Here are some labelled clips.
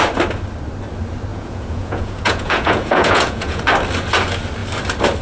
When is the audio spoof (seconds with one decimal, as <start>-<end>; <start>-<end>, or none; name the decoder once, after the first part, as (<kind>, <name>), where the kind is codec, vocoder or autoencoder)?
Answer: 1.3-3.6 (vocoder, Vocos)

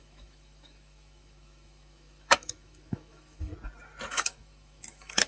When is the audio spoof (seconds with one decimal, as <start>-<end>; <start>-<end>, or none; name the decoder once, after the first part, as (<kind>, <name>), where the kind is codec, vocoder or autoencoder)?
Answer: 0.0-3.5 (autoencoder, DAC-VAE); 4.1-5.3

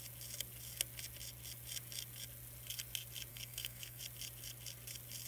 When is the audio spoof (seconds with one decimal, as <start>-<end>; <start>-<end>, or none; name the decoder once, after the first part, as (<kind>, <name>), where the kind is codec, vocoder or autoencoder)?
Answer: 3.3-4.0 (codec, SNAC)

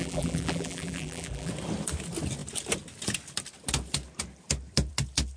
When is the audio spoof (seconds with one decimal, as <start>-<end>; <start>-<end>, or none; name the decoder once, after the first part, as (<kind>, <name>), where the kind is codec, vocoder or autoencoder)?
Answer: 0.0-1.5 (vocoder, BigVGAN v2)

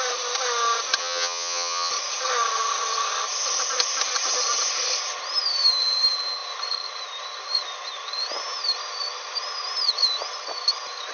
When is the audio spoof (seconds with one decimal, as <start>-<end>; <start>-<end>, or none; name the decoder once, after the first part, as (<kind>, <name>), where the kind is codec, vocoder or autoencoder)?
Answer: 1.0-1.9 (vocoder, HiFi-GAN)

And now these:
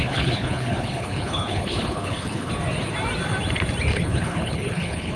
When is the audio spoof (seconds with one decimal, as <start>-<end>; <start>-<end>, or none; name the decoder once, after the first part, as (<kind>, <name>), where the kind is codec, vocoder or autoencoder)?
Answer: 0.0-2.5 (codec, HILCodec); 3.9-5.2

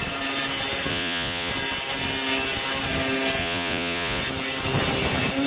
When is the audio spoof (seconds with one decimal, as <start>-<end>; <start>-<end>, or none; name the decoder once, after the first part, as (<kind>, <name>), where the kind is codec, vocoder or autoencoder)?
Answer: 0.9-1.5 (vocoder, Vocos); 3.4-4.2

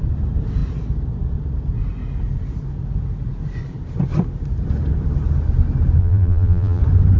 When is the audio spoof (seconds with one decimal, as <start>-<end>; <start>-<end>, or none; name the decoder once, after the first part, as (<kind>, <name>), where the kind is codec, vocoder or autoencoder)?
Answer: 6.0-6.8 (vocoder, BigVGAN v2)